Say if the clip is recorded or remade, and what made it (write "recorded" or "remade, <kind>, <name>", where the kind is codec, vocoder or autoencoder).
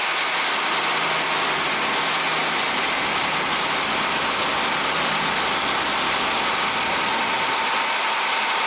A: recorded